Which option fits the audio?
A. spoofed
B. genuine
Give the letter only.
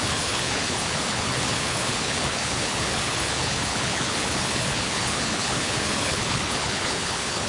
A